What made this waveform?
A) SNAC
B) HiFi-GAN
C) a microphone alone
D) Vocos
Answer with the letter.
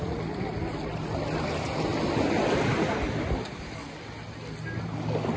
C